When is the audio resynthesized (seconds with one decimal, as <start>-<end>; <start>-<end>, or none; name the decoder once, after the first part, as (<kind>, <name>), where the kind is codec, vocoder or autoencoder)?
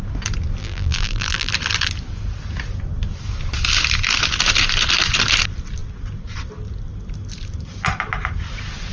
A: 0.6-1.5 (vocoder, BigVGAN v2)